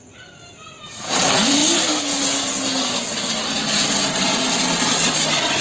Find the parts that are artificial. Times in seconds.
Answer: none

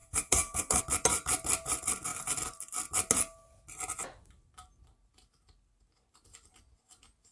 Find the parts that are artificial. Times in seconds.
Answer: 0.0-0.8 (codec, SNAC)

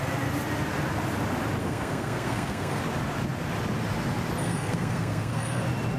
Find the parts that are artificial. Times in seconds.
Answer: 1.6-2.8 (codec, SNAC); 4.4-5.6